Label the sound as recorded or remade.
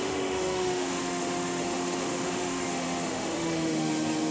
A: remade